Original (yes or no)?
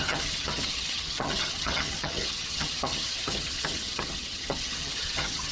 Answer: no